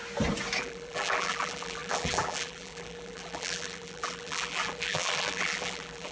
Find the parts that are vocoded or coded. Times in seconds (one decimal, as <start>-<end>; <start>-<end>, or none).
0.6-6.1